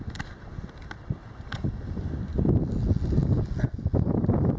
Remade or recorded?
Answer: recorded